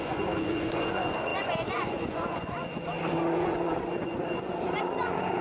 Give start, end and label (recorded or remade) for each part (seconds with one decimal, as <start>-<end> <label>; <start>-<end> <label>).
0.0-5.4 remade